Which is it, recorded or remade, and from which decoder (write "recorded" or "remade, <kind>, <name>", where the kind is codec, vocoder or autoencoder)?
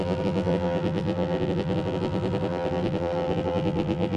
remade, vocoder, BigVGAN v2